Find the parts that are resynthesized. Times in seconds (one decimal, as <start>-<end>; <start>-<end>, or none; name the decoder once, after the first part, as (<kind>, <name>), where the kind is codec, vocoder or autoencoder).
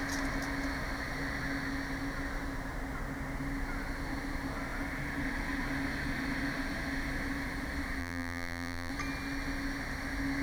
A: 8.0-8.9 (vocoder, BigVGAN v2)